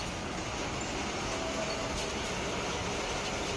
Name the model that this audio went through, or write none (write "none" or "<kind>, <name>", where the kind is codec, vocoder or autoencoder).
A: none